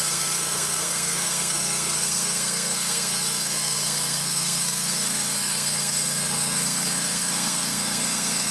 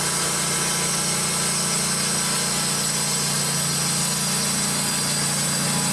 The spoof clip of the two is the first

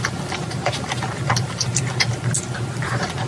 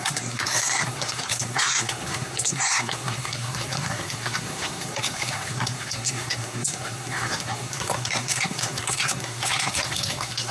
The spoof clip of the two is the second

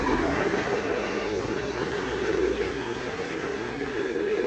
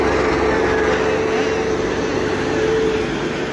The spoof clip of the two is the first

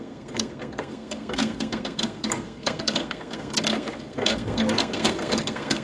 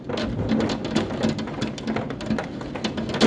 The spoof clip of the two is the first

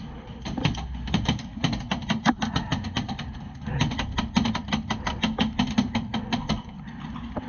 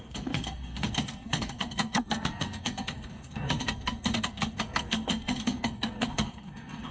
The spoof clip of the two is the second